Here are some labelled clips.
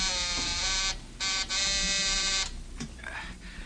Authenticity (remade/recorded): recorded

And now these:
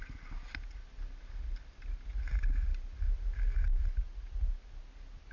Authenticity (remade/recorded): recorded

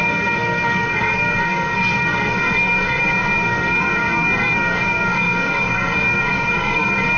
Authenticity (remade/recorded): remade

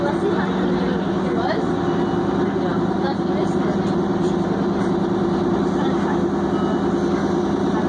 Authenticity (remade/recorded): recorded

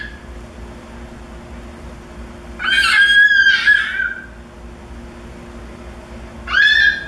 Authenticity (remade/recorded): recorded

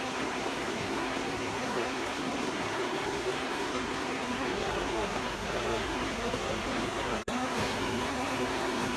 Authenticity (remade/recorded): remade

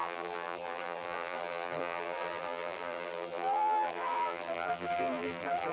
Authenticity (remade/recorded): remade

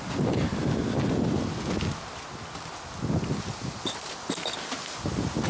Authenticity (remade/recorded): recorded